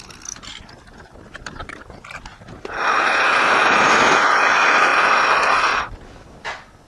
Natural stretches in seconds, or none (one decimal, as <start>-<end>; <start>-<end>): 0.0-1.6; 4.1-6.9